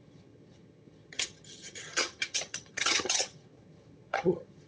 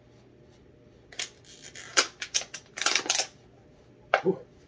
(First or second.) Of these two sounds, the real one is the second